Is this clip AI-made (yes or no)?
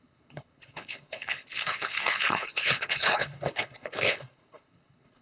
yes